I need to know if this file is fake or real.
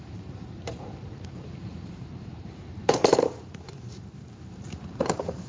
fake